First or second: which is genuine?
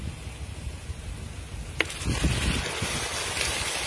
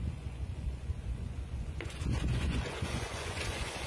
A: first